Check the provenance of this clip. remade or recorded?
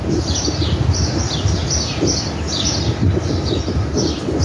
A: recorded